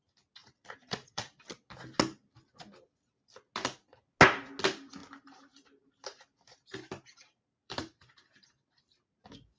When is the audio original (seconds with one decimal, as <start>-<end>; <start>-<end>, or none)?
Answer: 0.0-0.4; 1.4-5.0; 9.2-9.6